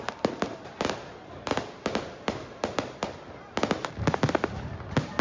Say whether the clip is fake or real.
real